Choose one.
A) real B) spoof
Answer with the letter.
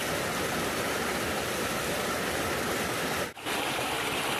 A